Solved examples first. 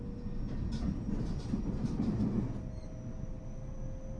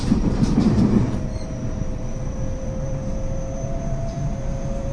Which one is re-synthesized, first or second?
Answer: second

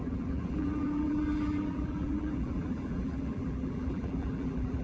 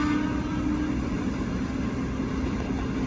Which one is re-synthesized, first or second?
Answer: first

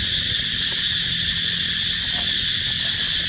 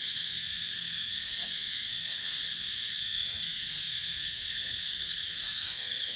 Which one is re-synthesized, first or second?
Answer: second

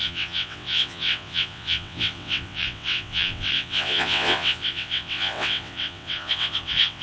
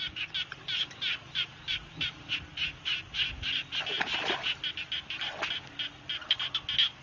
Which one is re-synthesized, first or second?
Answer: first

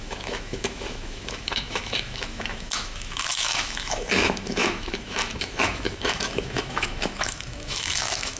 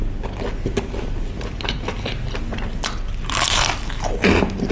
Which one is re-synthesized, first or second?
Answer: first